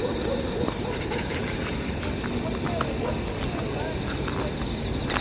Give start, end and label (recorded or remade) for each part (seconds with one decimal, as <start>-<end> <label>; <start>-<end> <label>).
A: 0.0-5.2 recorded